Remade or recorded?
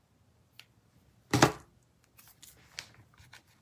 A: recorded